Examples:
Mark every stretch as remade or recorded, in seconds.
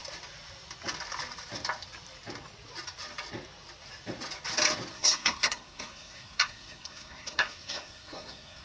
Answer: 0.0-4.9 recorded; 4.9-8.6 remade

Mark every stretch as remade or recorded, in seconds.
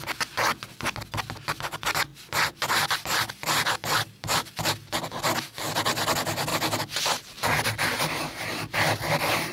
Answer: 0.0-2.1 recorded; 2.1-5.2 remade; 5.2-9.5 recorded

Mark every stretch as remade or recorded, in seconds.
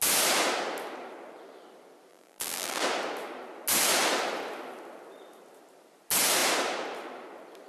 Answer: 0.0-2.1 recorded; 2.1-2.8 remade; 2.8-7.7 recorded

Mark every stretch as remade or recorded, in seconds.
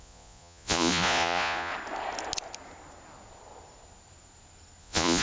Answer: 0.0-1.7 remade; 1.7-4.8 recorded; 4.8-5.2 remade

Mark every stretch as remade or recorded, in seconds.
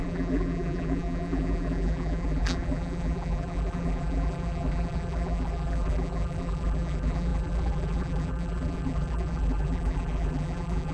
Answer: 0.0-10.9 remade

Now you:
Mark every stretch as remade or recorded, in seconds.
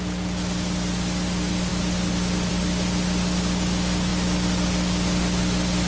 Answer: 0.0-5.9 recorded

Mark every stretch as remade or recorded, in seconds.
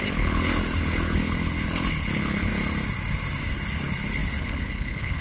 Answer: 0.0-2.5 remade; 2.5-3.5 recorded; 3.5-5.2 remade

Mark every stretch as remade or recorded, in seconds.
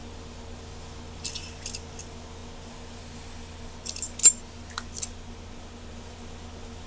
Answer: 0.0-6.9 recorded